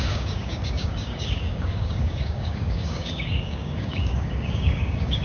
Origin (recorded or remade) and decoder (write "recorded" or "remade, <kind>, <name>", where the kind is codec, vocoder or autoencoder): remade, codec, DAC